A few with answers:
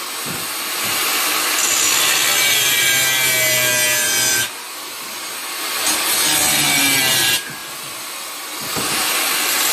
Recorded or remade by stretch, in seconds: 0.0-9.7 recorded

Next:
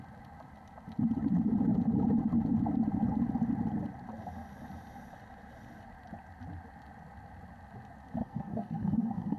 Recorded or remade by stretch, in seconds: 0.0-8.2 recorded; 8.2-9.4 remade

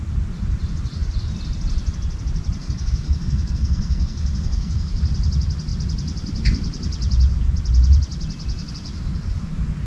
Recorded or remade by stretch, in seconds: 0.0-2.6 recorded; 2.6-4.9 remade; 4.9-9.9 recorded

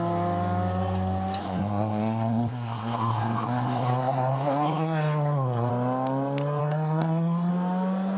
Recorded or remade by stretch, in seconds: 0.0-1.4 recorded; 1.4-5.7 remade; 5.7-6.6 recorded; 6.6-7.5 remade; 7.5-8.2 recorded

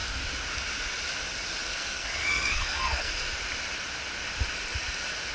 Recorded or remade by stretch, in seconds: 0.0-1.6 recorded; 1.6-3.1 remade; 3.1-5.3 recorded

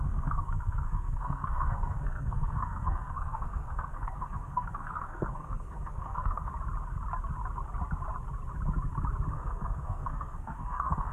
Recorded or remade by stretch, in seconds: 0.0-6.5 remade; 6.5-9.3 recorded; 9.3-11.1 remade

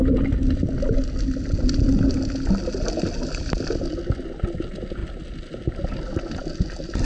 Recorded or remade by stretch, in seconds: 0.0-7.0 recorded

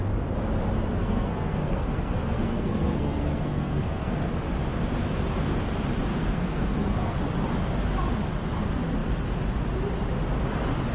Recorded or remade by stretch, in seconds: 0.0-1.0 recorded; 1.0-4.3 remade; 4.3-6.1 recorded; 6.1-7.2 remade; 7.2-10.9 recorded